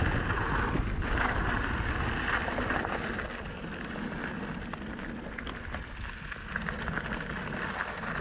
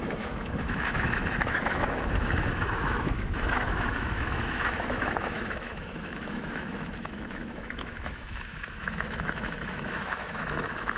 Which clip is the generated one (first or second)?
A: second